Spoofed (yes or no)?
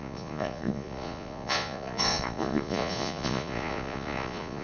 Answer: yes